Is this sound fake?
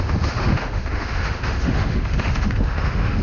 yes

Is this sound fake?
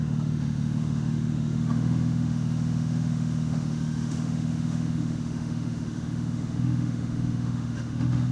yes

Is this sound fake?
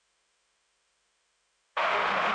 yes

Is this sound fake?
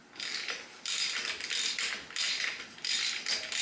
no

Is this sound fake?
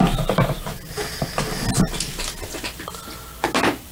no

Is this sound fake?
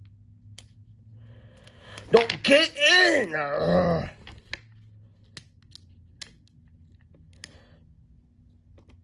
no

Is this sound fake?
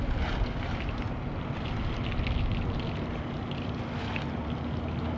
no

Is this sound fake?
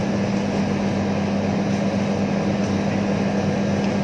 no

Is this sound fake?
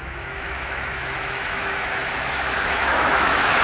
yes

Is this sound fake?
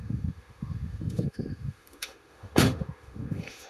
yes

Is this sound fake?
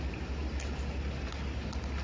no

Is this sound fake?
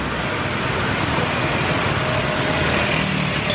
no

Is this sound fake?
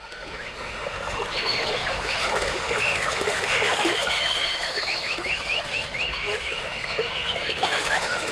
yes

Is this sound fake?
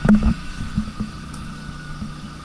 yes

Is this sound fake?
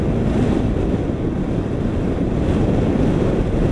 no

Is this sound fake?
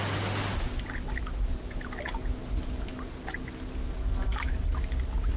no